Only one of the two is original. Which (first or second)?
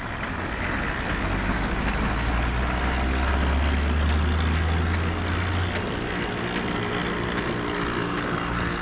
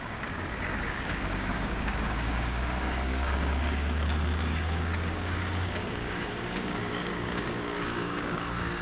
first